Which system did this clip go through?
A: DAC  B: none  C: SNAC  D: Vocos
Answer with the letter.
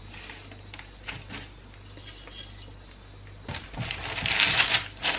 B